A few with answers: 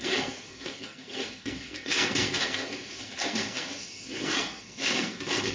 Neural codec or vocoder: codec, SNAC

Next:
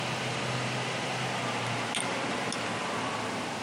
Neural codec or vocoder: none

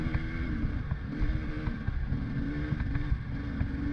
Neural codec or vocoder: none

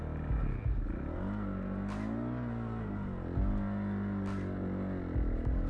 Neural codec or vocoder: none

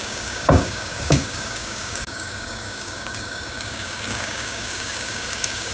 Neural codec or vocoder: codec, DAC